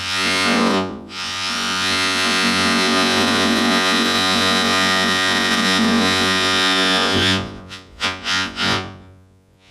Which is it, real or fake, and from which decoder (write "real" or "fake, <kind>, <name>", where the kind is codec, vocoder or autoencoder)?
fake, vocoder, Vocos